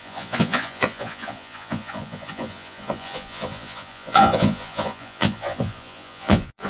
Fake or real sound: fake